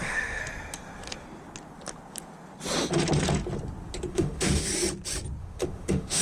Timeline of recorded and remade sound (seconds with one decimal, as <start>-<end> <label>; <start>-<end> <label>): 0.0-0.4 remade; 0.4-4.1 recorded; 4.1-4.7 remade; 4.7-5.4 recorded; 5.4-6.2 remade